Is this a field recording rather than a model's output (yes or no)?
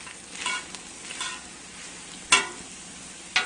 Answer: yes